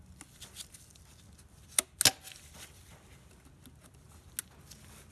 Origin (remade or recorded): recorded